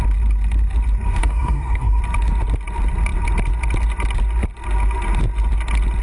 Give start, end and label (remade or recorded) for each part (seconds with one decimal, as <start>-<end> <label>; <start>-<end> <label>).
0.0-1.2 recorded; 1.2-2.0 remade; 2.0-6.0 recorded